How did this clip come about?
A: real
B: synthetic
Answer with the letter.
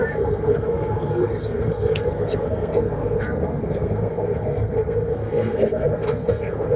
B